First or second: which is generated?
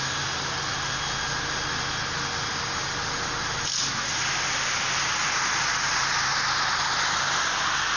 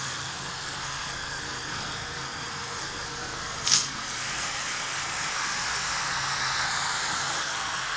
second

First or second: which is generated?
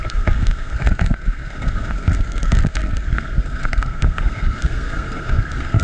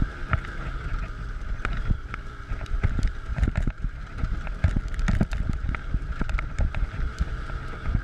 first